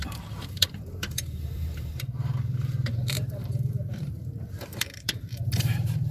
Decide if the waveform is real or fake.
fake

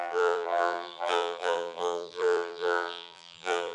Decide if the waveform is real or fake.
fake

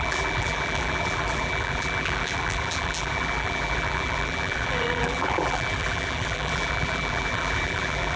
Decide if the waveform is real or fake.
fake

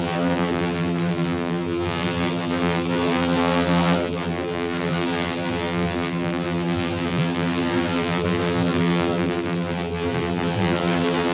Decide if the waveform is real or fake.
fake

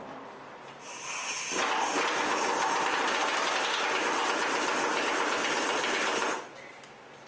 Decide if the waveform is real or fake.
fake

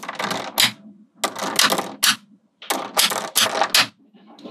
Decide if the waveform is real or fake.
real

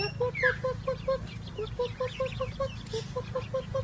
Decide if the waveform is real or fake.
real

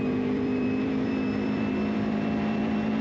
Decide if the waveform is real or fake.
fake